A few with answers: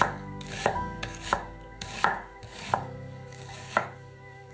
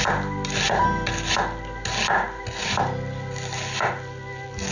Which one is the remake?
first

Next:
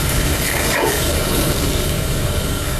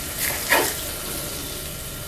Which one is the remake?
first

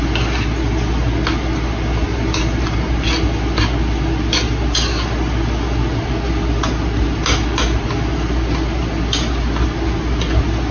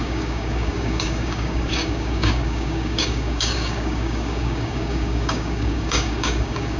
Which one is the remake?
second